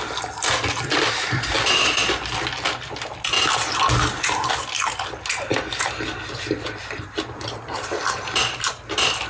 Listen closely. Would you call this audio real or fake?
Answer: real